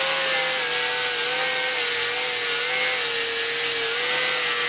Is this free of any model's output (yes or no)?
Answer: yes